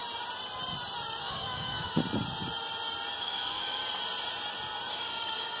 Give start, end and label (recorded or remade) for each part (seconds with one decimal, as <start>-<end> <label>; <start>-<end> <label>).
0.0-1.2 recorded; 1.2-2.0 remade; 2.0-3.2 recorded; 3.2-3.8 remade; 3.8-4.9 recorded; 4.9-5.6 remade